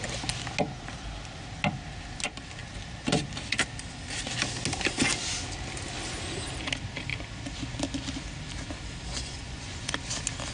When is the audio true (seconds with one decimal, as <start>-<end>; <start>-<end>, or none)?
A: 0.0-9.1; 9.9-10.5